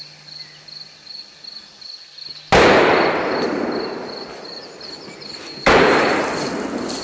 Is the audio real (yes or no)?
yes